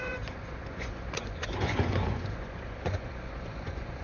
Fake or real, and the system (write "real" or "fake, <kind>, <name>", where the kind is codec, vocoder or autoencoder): fake, vocoder, Vocos